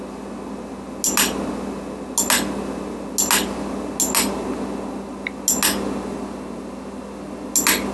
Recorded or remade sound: recorded